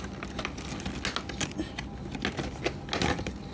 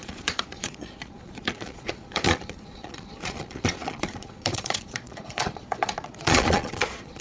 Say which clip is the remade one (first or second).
second